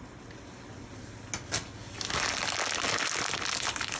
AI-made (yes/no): no